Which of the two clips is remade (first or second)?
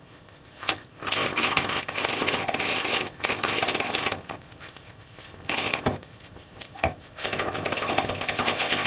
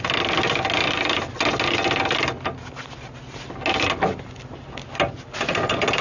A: first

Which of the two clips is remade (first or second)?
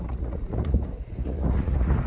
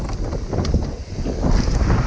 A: first